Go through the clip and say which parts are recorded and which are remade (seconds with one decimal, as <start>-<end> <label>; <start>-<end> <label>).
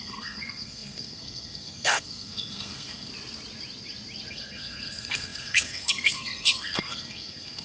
0.0-3.1 remade; 3.1-4.3 recorded; 4.3-7.6 remade